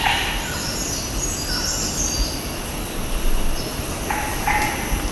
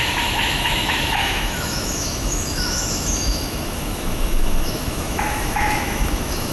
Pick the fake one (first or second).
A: second